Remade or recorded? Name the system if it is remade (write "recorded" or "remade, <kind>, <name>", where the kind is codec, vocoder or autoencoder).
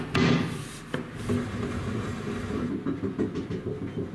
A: recorded